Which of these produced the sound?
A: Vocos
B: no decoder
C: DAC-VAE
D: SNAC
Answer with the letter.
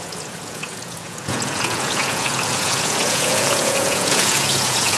A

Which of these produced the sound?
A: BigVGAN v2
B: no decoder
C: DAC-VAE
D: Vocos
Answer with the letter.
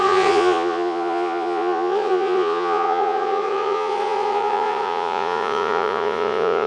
D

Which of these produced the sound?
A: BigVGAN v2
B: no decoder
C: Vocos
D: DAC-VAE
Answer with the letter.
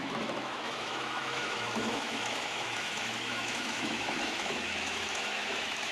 D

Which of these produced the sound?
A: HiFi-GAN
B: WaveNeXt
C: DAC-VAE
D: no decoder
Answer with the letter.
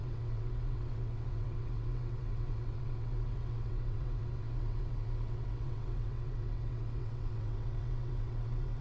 B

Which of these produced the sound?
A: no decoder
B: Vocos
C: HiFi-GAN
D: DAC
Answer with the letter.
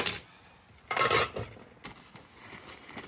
A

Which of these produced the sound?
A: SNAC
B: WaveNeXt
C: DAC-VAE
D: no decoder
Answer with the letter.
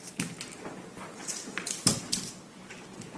D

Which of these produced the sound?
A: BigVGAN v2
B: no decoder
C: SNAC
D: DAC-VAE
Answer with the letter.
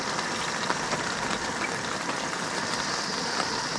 B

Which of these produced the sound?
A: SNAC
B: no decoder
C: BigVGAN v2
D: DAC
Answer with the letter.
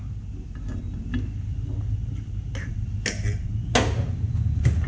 B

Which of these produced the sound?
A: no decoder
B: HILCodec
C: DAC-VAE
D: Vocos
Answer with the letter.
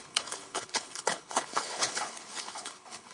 B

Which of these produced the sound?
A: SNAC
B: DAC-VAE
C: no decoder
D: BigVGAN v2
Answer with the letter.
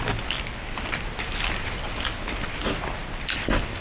C